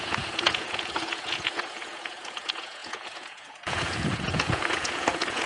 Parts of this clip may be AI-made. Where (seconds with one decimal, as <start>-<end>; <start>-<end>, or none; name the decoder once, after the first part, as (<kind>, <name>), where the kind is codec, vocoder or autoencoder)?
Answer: 0.0-5.5 (vocoder, Vocos)